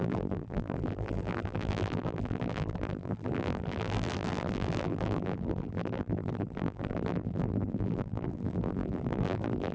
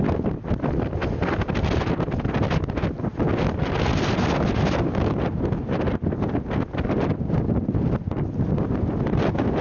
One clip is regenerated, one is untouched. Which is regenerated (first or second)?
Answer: first